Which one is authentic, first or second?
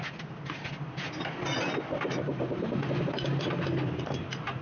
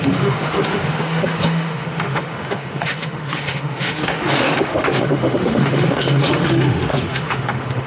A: first